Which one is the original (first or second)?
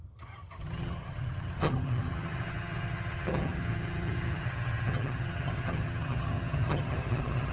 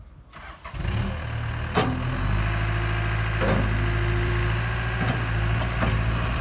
second